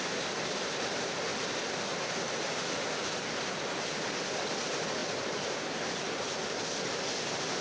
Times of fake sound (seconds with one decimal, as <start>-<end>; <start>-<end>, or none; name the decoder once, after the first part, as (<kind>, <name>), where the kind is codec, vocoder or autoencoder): none